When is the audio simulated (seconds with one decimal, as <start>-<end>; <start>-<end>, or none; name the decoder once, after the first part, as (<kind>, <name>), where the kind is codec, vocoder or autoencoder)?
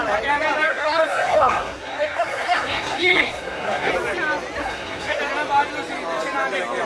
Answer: 0.7-3.9 (codec, SNAC); 4.6-5.2